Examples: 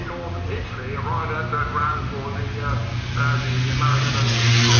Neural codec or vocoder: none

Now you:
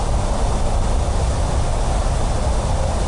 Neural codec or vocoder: none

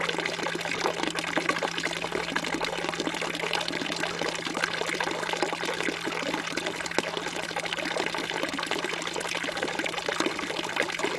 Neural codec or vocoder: none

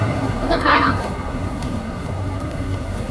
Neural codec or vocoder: codec, SNAC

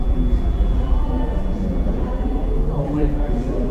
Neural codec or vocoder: vocoder, BigVGAN v2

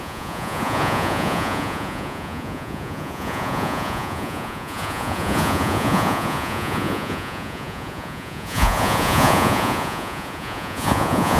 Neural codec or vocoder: vocoder, Vocos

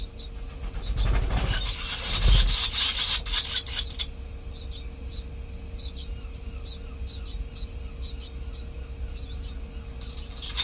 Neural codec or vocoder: none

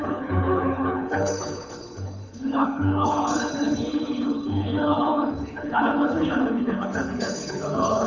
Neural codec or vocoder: codec, HILCodec